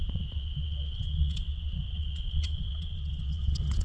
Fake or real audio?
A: fake